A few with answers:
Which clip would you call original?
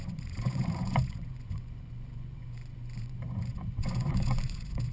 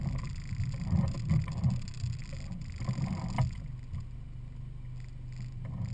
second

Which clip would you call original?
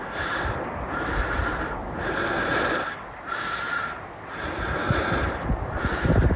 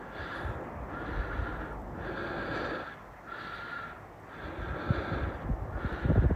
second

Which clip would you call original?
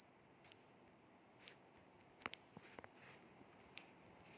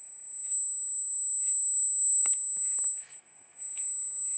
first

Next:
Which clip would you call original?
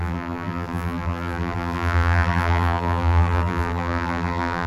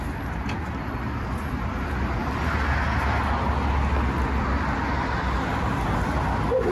second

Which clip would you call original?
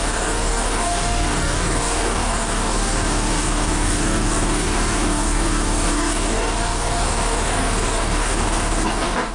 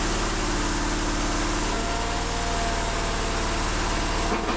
second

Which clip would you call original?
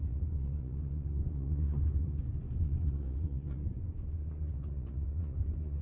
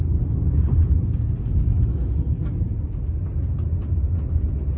second